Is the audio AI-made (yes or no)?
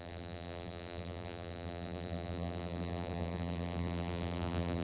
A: yes